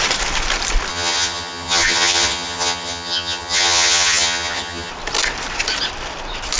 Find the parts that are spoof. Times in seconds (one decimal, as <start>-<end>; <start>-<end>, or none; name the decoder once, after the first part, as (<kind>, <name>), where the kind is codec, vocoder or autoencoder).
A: 0.9-4.9 (vocoder, HiFi-GAN)